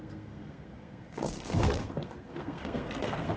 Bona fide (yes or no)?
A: no